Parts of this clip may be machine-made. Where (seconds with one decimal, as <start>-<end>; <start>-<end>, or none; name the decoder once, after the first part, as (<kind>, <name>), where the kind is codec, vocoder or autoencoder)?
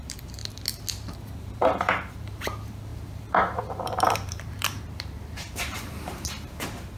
0.0-0.4 (vocoder, BigVGAN v2); 1.4-7.0